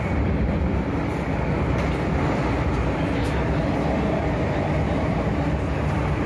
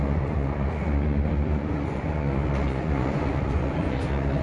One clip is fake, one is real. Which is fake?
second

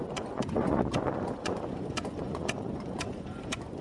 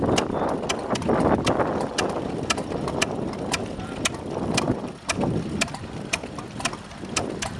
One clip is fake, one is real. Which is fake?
first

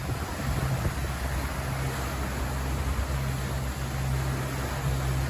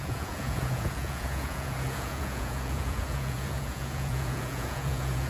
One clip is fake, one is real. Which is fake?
second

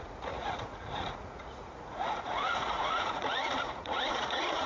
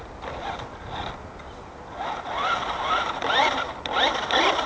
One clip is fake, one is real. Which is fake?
first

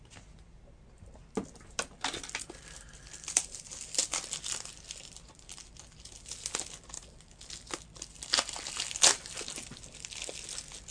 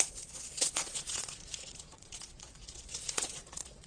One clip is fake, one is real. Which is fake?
second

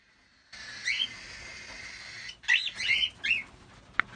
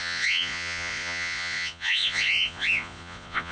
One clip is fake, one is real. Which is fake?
second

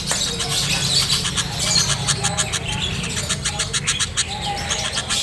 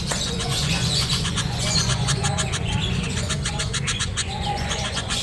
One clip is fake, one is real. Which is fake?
second